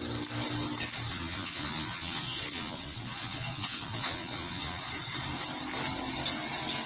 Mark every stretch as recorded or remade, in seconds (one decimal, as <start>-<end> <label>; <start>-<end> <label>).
0.0-1.1 recorded; 1.1-4.9 remade; 4.9-6.9 recorded